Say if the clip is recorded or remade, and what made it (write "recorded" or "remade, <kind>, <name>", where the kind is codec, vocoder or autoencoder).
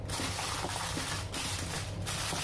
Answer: recorded